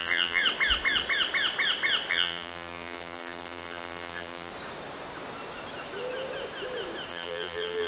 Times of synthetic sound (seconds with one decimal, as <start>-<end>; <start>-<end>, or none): 0.0-0.4; 2.1-4.5; 7.1-7.9